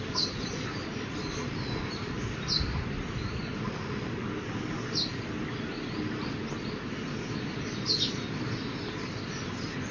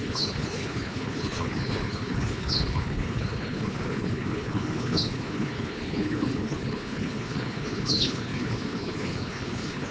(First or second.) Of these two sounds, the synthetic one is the second